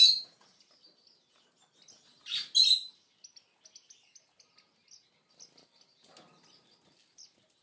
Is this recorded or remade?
recorded